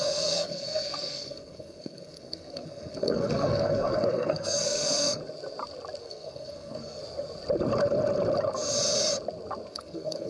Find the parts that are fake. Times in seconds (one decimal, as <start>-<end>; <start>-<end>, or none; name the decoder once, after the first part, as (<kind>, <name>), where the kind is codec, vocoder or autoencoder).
0.0-5.2 (codec, SNAC); 6.0-7.0; 9.7-10.3